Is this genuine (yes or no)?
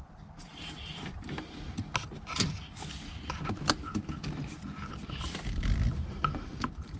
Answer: yes